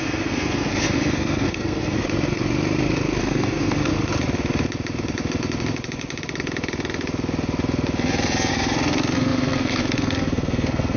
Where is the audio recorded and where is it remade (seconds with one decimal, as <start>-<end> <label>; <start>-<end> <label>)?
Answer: 0.0-2.0 remade; 2.0-3.2 recorded; 3.2-3.9 remade; 3.9-8.5 recorded; 8.5-11.0 remade